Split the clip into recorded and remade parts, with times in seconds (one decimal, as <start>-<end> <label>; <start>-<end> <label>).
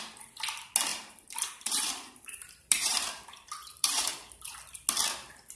0.0-0.9 recorded; 0.9-4.3 remade; 4.3-5.6 recorded